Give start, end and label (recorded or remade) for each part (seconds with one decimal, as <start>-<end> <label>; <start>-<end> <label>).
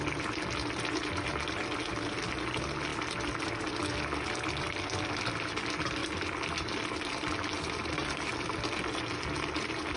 0.0-10.0 recorded